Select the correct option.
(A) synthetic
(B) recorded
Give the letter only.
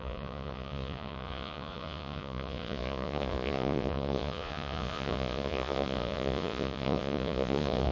A